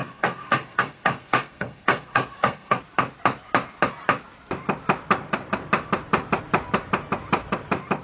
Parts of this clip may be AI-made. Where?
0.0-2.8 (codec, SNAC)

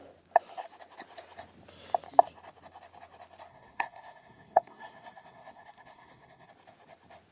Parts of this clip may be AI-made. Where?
3.5-6.5 (codec, SNAC)

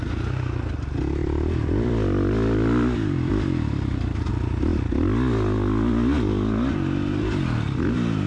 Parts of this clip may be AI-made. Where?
1.2-4.3 (vocoder, BigVGAN v2)

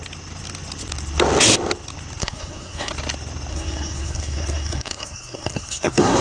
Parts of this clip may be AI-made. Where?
2.2-2.9 (codec, SNAC); 3.5-6.2

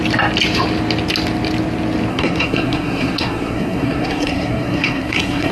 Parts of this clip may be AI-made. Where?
2.1-5.5 (codec, SNAC)